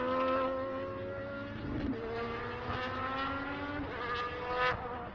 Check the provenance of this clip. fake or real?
real